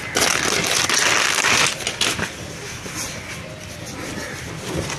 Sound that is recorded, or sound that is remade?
recorded